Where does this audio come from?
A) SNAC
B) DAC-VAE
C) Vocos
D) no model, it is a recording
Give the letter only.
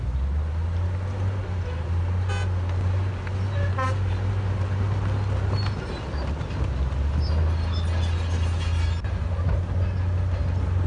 D